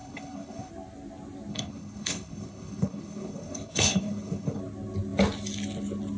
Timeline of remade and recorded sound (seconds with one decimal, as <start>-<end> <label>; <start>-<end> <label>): 0.0-0.7 remade; 0.7-1.5 recorded; 1.5-4.6 remade; 4.6-6.2 recorded